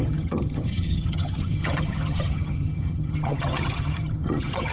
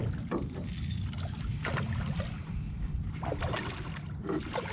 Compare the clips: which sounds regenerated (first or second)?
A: first